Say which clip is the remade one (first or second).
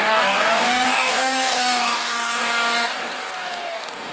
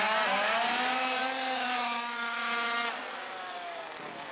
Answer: first